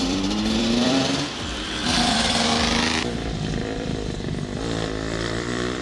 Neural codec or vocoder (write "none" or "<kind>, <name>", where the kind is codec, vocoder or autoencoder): vocoder, BigVGAN v2